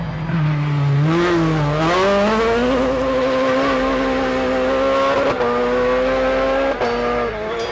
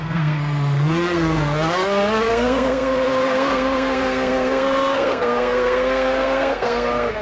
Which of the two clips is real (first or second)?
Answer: first